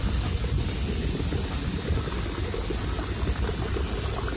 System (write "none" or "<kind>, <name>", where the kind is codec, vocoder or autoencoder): none